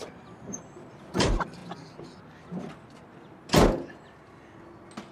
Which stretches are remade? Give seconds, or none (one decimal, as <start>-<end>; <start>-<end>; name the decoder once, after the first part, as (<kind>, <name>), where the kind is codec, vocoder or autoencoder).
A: 0.0-1.6 (vocoder, BigVGAN v2)